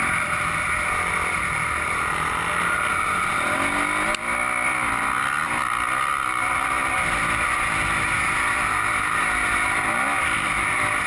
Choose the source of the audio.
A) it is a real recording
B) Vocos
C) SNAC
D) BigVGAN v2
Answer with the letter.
A